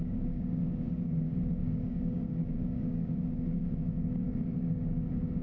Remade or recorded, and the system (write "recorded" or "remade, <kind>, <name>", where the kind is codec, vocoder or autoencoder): remade, codec, DAC